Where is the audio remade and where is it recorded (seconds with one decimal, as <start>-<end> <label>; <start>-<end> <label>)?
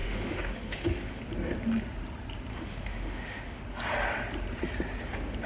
0.0-1.2 remade; 1.2-2.5 recorded; 2.5-3.6 remade; 3.6-5.5 recorded